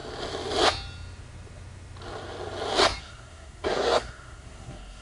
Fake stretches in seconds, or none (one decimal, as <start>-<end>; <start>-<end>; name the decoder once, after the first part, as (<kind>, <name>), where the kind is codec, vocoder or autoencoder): 3.0-5.0 (codec, SNAC)